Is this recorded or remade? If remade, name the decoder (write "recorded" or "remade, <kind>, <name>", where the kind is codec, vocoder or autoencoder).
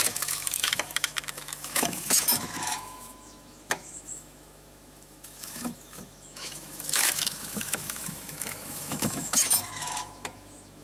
remade, autoencoder, DAC-VAE